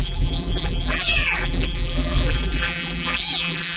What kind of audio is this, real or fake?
fake